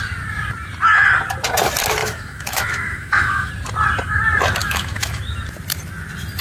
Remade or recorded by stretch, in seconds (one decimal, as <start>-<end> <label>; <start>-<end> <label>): 0.0-2.0 recorded; 2.0-3.5 remade; 3.5-4.6 recorded; 4.6-5.2 remade; 5.2-6.4 recorded